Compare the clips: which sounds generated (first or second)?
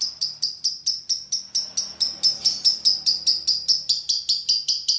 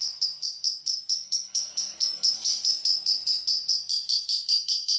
second